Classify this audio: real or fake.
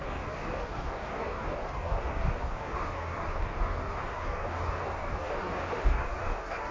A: fake